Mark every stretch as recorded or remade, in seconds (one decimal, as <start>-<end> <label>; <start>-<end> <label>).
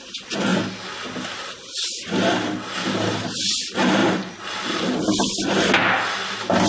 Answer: 0.0-4.0 recorded; 4.0-5.5 remade; 5.5-6.7 recorded